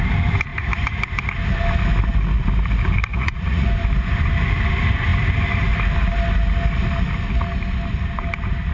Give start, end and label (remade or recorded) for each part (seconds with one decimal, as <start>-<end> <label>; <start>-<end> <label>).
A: 0.0-3.1 recorded; 3.1-3.7 remade; 3.7-8.7 recorded